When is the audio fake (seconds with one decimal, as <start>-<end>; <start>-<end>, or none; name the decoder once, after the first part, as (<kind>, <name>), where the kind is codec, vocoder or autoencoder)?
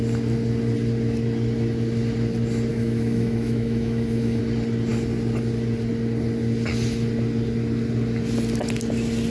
2.7-4.4 (autoencoder, DAC-VAE)